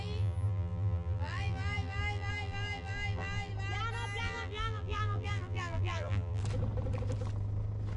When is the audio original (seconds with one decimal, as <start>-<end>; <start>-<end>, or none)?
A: 3.5-4.2; 6.4-8.0